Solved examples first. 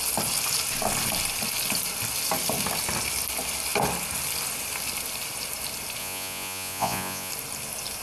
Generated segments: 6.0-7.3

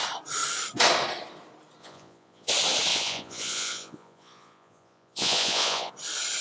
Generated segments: 1.8-2.5; 2.9-5.9

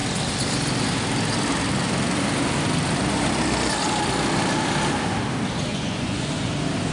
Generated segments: 5.7-6.5

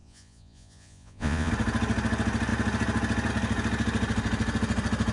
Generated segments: 0.0-1.5

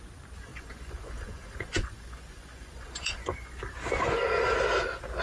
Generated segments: 0.5-3.6

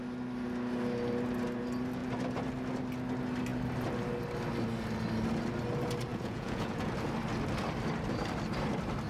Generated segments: 6.1-6.9

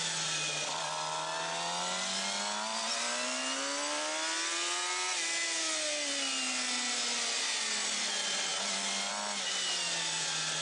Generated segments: none

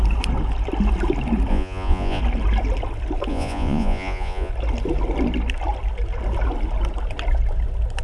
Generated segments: 1.5-2.2; 3.3-4.5